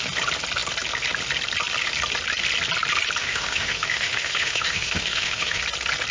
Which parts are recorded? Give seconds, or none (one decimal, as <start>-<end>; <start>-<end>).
0.0-3.2; 5.6-6.1